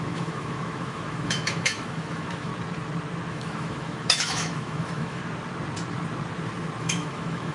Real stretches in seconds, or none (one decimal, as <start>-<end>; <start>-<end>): 2.5-3.3; 5.2-6.8